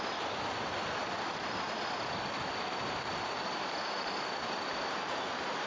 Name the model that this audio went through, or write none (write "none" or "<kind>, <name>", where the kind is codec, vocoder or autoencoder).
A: none